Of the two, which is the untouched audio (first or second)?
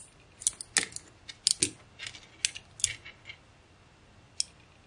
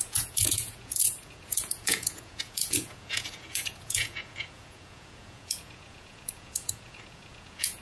first